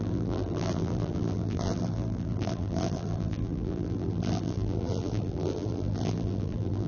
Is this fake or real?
fake